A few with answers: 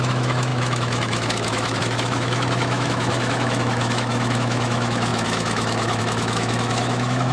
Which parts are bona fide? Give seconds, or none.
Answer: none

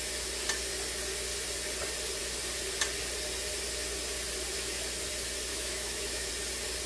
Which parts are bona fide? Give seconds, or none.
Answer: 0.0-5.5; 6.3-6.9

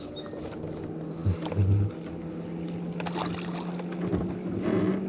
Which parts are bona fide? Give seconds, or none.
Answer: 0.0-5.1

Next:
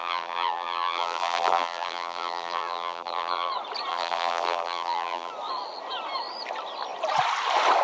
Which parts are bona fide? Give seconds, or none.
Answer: 3.5-3.9; 5.3-7.8